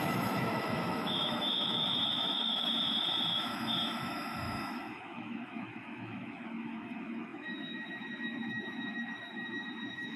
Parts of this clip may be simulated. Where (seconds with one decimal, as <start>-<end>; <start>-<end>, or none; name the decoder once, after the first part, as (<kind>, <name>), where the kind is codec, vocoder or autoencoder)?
0.0-10.2 (autoencoder, DAC-VAE)